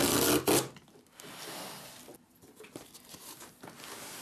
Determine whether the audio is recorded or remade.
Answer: recorded